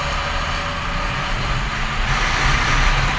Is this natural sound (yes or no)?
yes